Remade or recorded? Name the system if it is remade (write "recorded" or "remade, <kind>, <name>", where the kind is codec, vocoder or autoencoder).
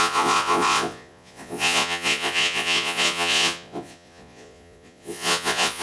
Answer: remade, vocoder, Vocos